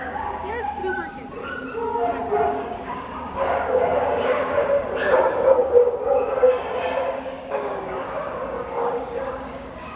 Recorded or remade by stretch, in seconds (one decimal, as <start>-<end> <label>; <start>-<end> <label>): 0.0-0.8 remade; 0.8-2.5 recorded; 2.5-10.0 remade